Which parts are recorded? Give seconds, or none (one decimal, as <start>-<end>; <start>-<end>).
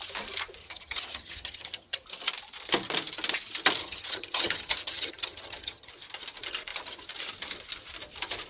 0.0-0.6; 2.0-3.8; 5.9-8.5